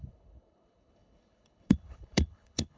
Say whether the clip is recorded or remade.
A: remade